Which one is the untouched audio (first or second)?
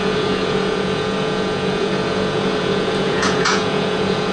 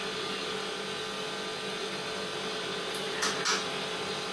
second